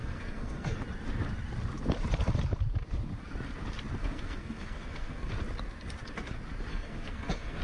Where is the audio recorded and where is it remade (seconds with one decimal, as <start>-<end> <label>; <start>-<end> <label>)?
0.0-0.7 remade; 0.7-4.0 recorded; 4.0-5.3 remade; 5.3-6.7 recorded; 6.7-7.6 remade